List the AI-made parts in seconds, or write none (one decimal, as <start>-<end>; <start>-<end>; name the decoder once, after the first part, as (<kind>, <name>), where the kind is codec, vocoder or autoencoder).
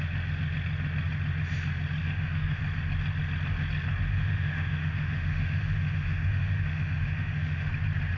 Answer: 2.0-2.6 (autoencoder, DAC-VAE); 4.1-7.7